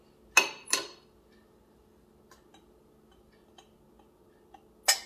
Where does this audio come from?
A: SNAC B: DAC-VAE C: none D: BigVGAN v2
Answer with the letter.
C